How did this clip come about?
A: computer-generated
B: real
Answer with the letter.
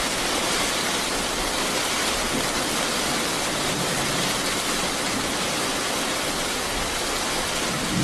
B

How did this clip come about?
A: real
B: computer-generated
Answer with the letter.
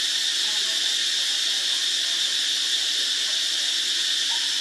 A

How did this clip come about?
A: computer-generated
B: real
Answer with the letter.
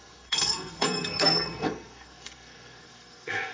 A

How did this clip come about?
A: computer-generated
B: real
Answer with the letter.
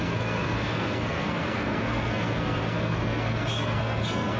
A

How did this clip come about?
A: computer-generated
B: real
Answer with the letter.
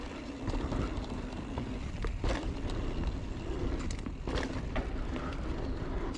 B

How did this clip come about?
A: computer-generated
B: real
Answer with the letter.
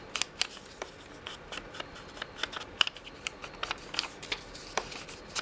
B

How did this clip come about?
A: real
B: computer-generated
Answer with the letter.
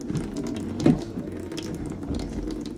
A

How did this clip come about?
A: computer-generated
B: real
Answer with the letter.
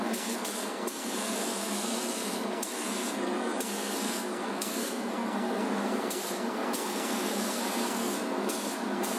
A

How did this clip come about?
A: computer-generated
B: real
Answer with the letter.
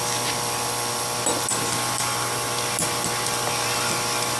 B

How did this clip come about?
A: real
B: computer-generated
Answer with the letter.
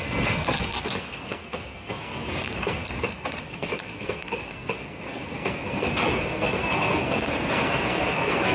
B